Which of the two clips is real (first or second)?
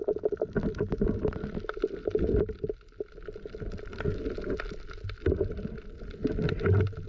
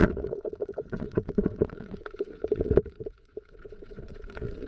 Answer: first